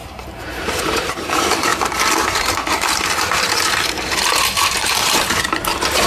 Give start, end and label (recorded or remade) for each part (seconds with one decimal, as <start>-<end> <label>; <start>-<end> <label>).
0.0-1.7 remade; 1.7-3.3 recorded; 3.3-6.1 remade